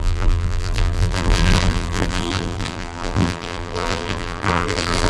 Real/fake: fake